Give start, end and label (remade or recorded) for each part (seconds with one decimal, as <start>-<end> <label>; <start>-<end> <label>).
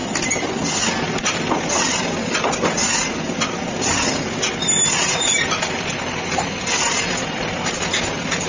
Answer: 0.0-8.5 recorded